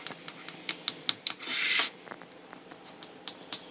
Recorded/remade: recorded